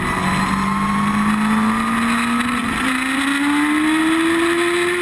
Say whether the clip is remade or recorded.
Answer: recorded